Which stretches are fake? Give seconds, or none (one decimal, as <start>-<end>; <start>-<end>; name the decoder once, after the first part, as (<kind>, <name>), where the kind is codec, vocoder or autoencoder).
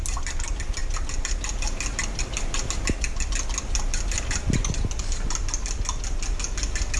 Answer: none